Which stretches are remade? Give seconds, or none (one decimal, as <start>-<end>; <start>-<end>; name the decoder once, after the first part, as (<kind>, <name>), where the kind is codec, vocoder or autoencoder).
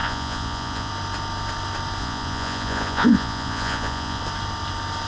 0.0-0.9 (vocoder, Vocos); 2.0-4.2